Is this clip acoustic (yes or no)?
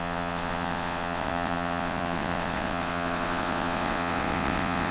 no